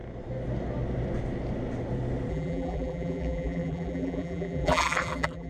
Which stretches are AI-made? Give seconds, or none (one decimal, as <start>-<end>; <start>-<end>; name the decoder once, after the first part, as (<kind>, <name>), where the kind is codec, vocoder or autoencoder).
2.3-5.5 (vocoder, BigVGAN v2)